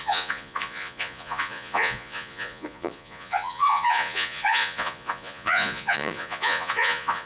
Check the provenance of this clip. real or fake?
fake